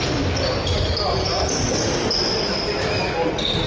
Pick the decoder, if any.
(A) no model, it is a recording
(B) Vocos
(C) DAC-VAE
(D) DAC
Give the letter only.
A